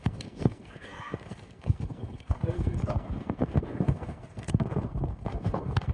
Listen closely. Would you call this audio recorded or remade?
remade